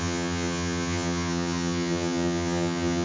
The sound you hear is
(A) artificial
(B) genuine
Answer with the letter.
A